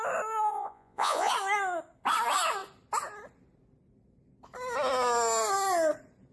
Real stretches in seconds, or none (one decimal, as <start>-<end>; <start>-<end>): 0.0-0.5; 1.3-6.3